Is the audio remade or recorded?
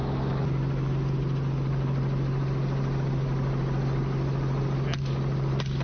recorded